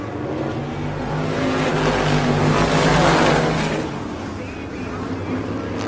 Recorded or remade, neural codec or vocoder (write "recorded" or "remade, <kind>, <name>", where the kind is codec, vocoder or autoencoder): recorded